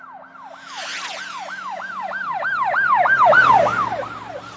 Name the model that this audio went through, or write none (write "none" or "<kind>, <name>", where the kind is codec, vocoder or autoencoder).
none